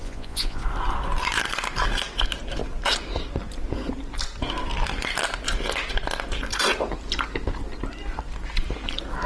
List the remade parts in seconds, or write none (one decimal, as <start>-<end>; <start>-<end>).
0.0-0.6